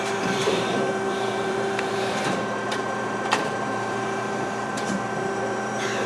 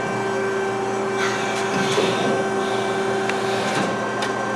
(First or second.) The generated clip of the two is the first